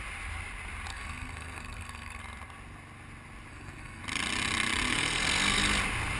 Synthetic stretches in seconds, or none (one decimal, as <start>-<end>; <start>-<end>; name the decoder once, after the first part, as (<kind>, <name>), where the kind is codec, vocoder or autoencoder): 0.9-2.2 (codec, SNAC); 3.5-4.0; 4.9-5.6